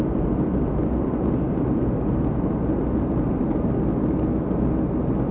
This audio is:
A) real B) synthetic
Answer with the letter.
A